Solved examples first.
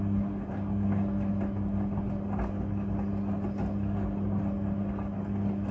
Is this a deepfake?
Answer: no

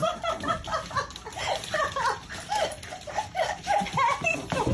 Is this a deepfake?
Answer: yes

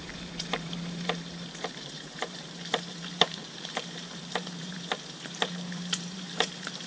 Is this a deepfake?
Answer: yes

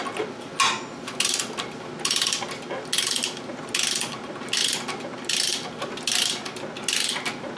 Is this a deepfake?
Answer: no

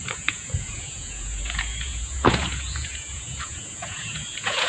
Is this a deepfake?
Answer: yes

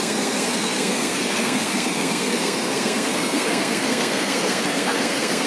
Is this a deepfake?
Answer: yes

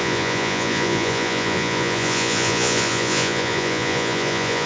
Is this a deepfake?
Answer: yes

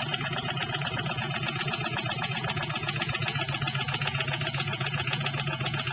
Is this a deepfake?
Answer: yes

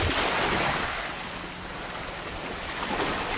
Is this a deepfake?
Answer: no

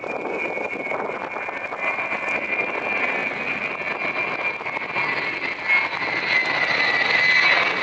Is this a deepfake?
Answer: no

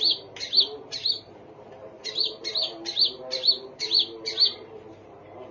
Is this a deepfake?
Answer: yes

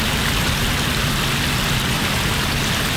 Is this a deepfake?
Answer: no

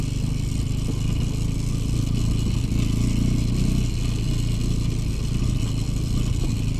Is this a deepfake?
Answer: no